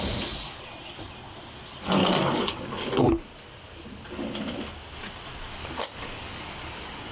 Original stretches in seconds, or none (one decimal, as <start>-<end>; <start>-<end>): 0.0-2.0; 3.1-5.6